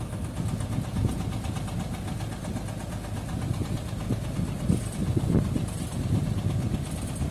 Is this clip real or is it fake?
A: real